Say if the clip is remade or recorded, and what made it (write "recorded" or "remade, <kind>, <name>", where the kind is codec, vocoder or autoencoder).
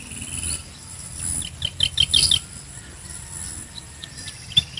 recorded